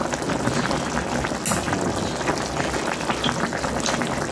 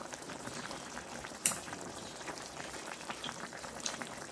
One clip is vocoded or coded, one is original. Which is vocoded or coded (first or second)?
second